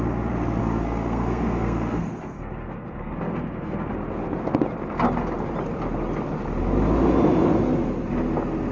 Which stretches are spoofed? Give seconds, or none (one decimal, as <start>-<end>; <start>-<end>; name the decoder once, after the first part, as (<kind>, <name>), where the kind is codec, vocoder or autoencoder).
0.6-3.9 (codec, SNAC)